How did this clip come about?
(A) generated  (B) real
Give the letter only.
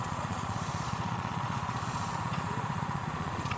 A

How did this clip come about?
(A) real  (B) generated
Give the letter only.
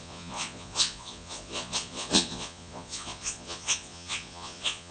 B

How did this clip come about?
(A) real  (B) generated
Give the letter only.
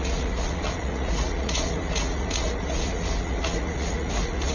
B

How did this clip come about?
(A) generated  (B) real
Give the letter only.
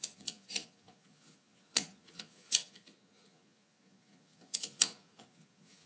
A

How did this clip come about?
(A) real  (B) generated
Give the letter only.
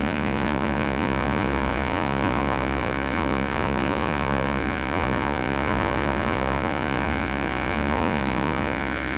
B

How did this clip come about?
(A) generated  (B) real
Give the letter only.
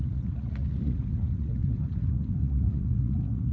A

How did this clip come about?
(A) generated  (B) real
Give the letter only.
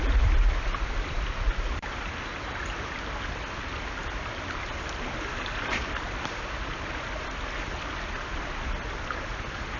B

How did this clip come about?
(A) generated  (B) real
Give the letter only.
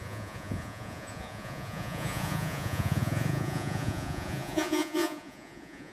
A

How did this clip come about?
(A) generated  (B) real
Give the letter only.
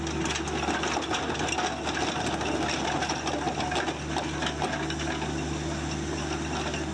B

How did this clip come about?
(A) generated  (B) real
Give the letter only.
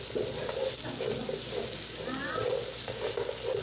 B